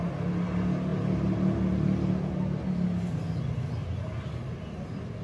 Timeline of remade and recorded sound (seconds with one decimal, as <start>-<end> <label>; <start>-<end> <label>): 0.0-3.8 recorded; 3.8-4.6 remade; 4.6-5.2 recorded